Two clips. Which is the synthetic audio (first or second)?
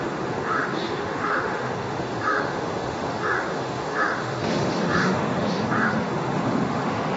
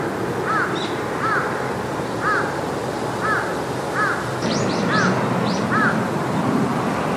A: first